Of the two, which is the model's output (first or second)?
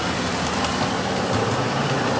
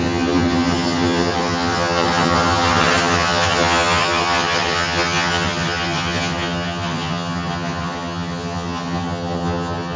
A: second